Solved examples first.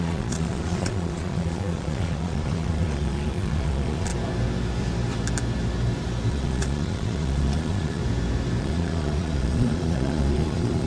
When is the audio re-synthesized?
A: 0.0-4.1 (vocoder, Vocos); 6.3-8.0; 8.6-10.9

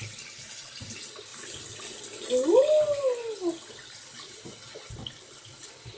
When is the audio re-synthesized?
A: none

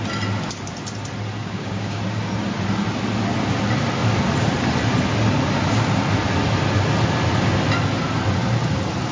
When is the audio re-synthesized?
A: 1.4-2.0 (codec, DAC)

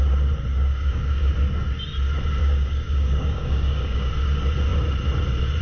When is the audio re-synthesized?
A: 0.5-1.3 (codec, DAC); 2.4-4.1

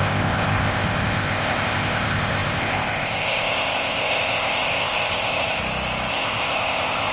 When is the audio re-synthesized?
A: 0.0-5.6 (codec, ZipCodec); 6.1-7.1